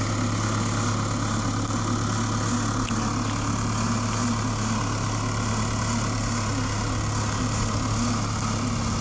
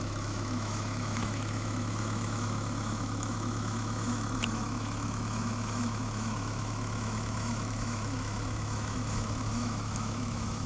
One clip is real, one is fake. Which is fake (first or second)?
second